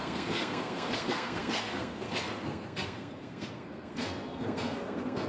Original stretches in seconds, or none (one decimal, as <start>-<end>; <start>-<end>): none